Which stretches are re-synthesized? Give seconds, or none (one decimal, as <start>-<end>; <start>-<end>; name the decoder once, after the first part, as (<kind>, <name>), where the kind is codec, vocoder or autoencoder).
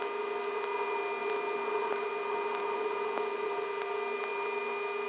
none